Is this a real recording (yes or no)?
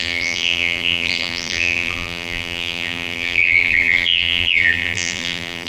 no